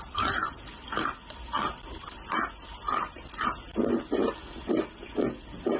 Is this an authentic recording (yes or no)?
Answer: yes